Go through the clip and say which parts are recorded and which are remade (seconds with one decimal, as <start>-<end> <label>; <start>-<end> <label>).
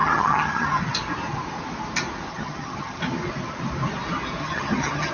0.0-0.8 remade; 0.8-2.3 recorded; 2.3-3.0 remade; 3.0-4.4 recorded; 4.4-5.1 remade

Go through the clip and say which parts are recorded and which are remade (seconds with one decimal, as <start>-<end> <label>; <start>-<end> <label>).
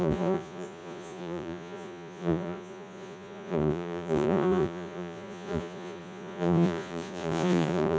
0.0-8.0 remade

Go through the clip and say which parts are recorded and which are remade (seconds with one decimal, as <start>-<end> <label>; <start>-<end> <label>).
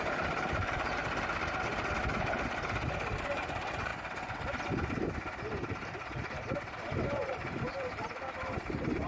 0.0-1.0 remade; 1.0-2.1 recorded; 2.1-3.9 remade; 3.9-7.6 recorded; 7.6-9.1 remade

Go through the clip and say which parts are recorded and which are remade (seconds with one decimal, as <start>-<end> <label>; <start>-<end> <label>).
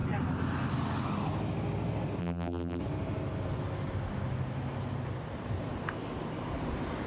0.0-2.2 recorded; 2.2-2.8 remade; 2.8-7.1 recorded